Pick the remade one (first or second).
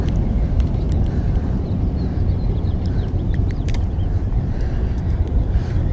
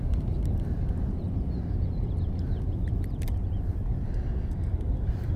first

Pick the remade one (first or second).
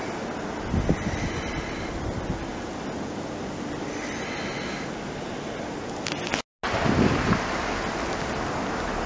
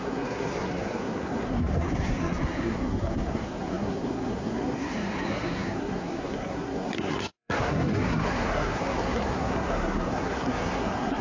second